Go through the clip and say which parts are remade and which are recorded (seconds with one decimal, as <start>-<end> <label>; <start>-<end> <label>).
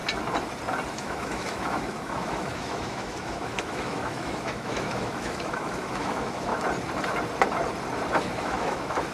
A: 0.0-0.9 recorded; 0.9-6.5 remade; 6.5-8.2 recorded; 8.2-9.1 remade